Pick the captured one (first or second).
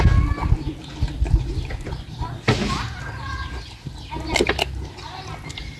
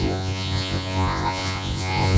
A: first